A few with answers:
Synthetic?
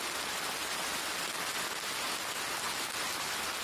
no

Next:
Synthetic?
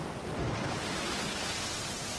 no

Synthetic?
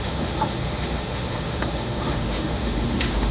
yes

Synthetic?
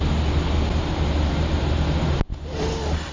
no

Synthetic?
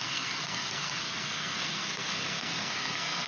yes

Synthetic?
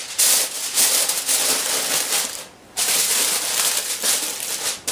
no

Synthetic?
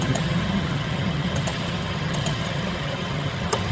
yes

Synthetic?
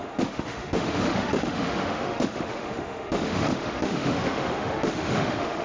yes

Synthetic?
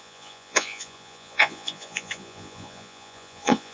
yes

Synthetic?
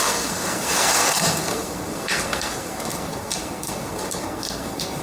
yes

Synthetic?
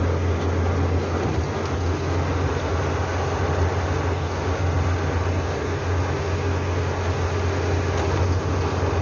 no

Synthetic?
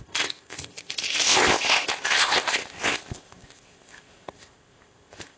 yes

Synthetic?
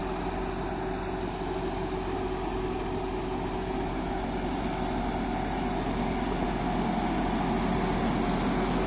no